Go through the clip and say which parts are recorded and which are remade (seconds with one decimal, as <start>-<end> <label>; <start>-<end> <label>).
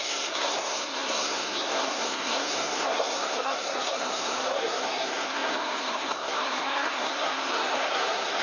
0.0-8.4 remade